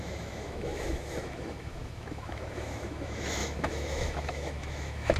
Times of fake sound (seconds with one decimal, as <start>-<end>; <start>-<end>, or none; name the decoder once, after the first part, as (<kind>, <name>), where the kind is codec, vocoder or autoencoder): 0.0-5.2 (autoencoder, DAC-VAE)